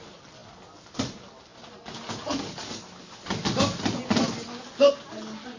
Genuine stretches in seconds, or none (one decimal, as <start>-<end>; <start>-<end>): 0.0-5.6